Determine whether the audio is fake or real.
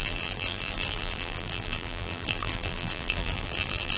fake